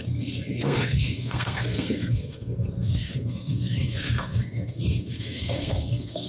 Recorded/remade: remade